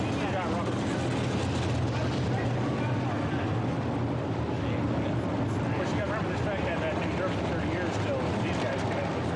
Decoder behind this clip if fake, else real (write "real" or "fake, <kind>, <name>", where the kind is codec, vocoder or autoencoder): real